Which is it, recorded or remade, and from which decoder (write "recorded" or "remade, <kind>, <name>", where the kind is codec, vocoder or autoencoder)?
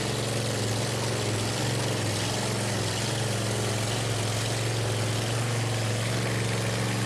recorded